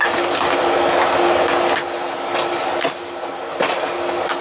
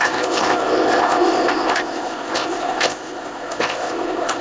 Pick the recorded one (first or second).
first